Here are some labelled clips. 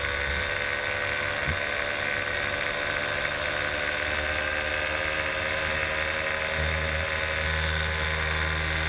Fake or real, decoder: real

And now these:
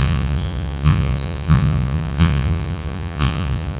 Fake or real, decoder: fake, vocoder, Vocos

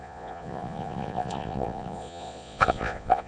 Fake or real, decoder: fake, vocoder, Vocos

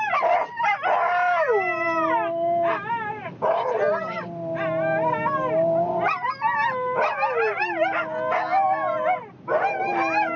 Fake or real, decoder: real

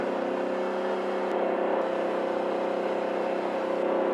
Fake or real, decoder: real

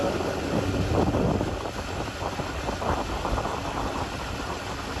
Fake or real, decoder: real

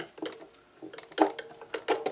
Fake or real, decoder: real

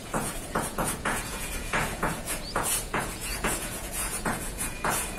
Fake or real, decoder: fake, vocoder, Vocos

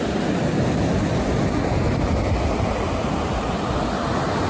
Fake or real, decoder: real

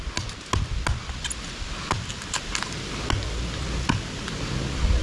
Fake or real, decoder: real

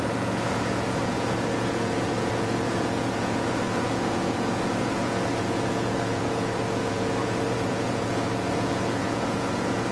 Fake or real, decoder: fake, vocoder, Vocos